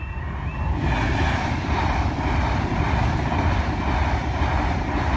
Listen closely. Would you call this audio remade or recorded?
recorded